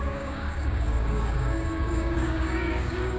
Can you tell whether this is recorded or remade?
remade